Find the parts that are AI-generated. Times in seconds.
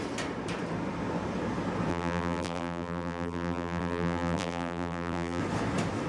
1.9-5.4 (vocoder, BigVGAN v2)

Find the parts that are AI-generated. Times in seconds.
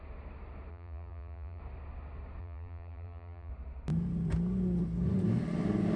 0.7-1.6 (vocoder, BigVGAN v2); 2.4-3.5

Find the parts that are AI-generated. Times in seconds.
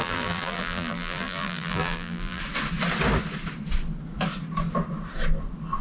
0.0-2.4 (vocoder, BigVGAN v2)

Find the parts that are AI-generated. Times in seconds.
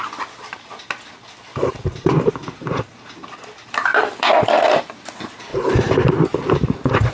1.5-2.3 (vocoder, BigVGAN v2); 3.9-4.6; 5.5-6.1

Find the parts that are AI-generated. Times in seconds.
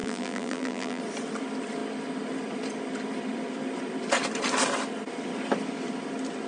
0.0-1.0 (vocoder, BigVGAN v2)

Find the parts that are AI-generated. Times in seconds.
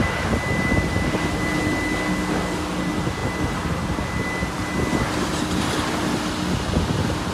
none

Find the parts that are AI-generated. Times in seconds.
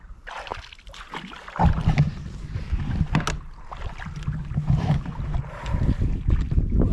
none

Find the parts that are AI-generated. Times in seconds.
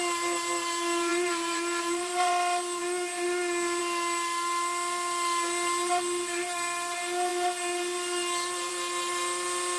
1.1-2.3 (vocoder, BigVGAN v2)